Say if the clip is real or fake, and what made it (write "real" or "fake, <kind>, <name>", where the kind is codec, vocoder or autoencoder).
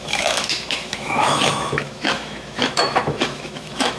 fake, autoencoder, DAC-VAE